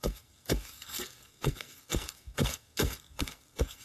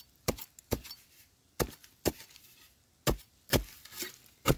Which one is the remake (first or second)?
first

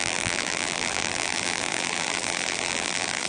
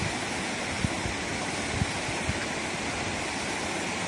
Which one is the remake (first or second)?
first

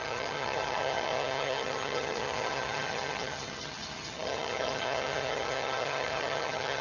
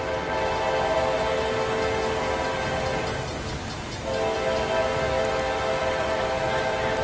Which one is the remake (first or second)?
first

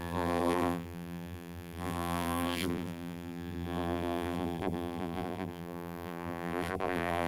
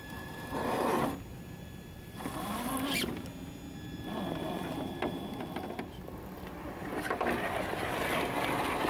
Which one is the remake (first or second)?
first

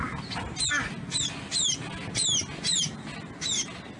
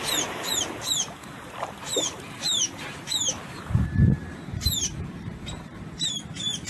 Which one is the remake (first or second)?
second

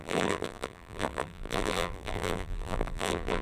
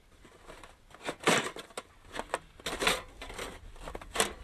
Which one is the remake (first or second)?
first